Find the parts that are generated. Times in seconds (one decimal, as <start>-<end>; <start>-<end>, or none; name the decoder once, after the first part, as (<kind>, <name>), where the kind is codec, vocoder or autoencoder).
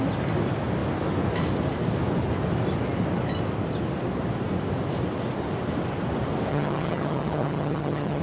6.5-8.2 (vocoder, HiFi-GAN)